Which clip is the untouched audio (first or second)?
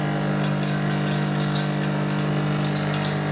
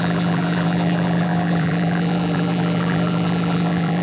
first